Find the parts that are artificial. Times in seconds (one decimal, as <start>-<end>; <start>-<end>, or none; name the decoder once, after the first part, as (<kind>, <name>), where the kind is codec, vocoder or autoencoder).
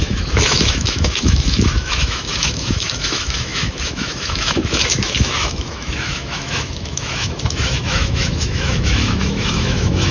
0.0-10.1 (autoencoder, DAC-VAE)